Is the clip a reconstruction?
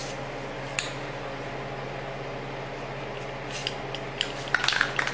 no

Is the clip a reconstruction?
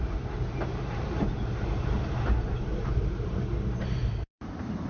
yes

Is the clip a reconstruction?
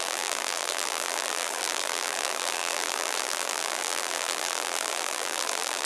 yes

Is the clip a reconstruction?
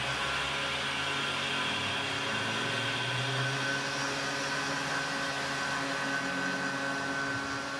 no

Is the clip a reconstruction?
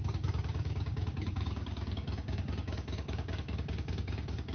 yes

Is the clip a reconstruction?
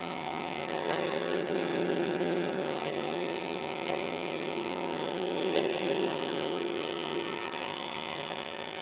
yes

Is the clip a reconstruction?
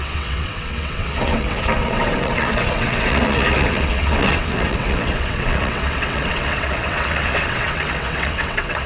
yes